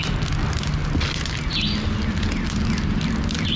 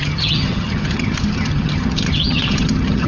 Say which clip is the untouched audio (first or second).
first